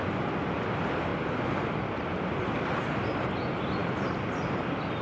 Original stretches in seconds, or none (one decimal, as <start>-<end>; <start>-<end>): 0.0-5.0

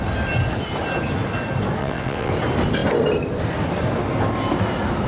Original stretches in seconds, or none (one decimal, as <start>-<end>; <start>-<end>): 0.0-1.8; 2.3-5.1